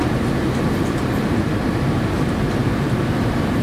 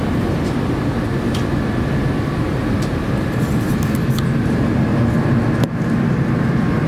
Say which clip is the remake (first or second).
first